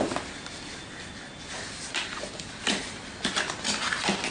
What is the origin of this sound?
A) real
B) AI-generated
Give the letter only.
A